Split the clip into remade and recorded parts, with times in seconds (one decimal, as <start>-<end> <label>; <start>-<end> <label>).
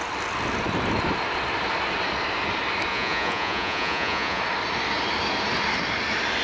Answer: 0.0-2.9 recorded; 2.9-4.4 remade; 4.4-6.4 recorded